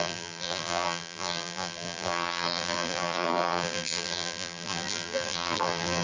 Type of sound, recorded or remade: remade